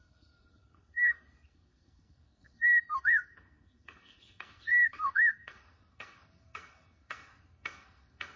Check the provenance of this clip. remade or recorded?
remade